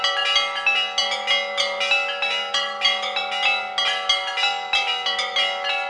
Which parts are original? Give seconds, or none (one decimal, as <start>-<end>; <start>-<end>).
0.0-5.9